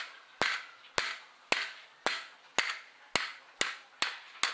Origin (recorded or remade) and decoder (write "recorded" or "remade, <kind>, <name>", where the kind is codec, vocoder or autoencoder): recorded